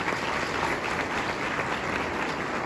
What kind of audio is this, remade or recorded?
recorded